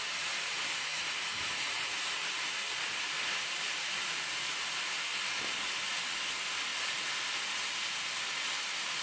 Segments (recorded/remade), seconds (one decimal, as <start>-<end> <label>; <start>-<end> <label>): 0.0-9.0 recorded